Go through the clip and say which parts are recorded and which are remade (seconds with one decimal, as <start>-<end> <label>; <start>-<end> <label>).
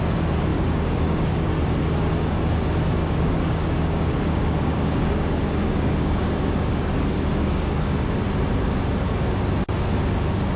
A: 0.0-0.5 recorded; 0.5-1.5 remade; 1.5-3.0 recorded; 3.0-8.2 remade; 8.2-10.6 recorded